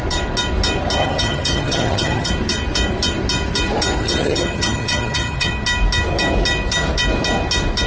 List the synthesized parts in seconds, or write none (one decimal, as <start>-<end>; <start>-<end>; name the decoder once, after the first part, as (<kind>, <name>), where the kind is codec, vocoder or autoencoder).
1.0-2.3 (vocoder, HiFi-GAN); 4.0-5.5

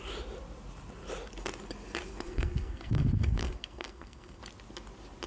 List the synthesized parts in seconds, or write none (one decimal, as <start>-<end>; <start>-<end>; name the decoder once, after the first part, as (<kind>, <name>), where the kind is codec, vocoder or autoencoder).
2.1-4.4 (codec, SNAC)

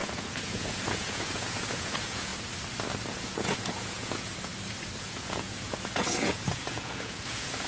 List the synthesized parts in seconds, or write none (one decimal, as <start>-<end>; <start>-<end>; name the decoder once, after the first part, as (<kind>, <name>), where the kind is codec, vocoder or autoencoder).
0.0-2.3 (vocoder, Vocos); 3.1-4.5; 5.0-7.7

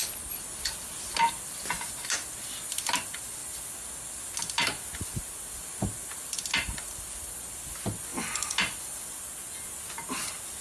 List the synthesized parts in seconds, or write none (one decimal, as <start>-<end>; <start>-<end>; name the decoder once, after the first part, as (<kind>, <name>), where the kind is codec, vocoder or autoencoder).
8.1-9.0 (vocoder, BigVGAN v2)

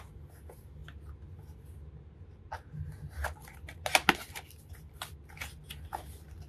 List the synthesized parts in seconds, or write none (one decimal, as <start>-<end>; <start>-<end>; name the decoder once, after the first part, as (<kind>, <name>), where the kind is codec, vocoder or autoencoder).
none

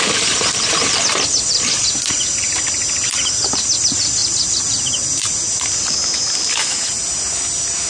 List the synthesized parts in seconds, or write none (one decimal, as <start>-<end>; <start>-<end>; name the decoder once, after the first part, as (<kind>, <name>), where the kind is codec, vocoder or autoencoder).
none